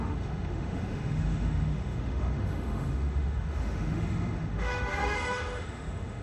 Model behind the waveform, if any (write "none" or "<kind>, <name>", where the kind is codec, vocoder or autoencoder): autoencoder, DAC-VAE